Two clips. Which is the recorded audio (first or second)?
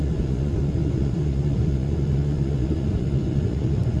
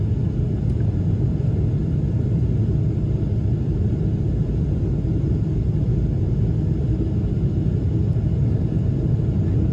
second